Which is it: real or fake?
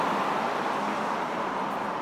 real